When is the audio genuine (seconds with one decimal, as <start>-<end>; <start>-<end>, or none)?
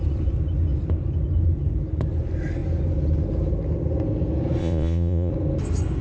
0.0-4.6; 5.3-6.0